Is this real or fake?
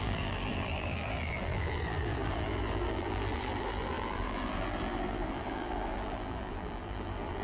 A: fake